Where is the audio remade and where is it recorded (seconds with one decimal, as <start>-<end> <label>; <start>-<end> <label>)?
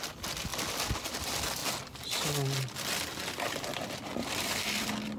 0.0-5.2 recorded